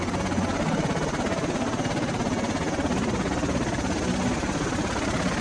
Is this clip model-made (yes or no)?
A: no